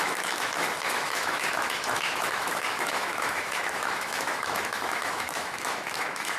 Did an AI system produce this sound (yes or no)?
yes